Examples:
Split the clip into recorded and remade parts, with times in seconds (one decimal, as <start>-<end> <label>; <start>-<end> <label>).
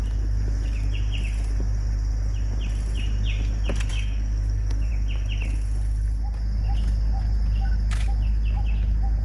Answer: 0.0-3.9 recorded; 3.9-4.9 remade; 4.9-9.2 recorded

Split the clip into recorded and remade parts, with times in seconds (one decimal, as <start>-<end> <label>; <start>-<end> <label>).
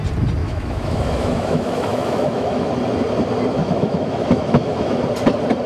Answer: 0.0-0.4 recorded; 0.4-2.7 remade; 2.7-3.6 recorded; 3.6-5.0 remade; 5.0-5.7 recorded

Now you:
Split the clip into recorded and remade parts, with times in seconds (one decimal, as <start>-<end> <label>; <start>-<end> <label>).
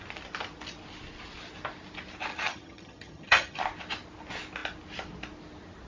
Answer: 0.0-2.3 recorded; 2.3-3.6 remade; 3.6-5.9 recorded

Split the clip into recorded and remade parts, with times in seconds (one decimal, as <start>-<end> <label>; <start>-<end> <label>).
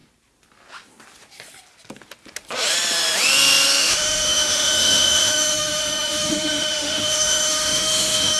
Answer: 0.0-3.8 recorded; 3.8-8.4 remade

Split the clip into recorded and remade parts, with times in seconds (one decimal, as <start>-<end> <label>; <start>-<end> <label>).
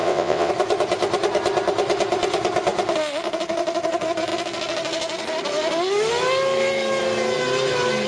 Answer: 0.0-0.5 remade; 0.5-8.1 recorded